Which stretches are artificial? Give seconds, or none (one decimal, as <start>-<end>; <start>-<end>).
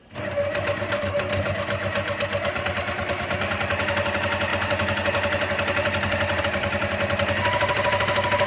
none